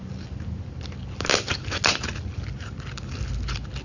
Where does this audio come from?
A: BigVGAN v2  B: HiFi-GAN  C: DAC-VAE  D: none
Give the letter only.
D